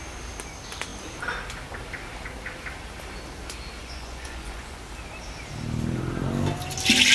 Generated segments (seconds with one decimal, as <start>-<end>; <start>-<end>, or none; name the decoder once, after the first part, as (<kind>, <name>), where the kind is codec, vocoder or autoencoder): 3.8-4.8 (vocoder, Vocos)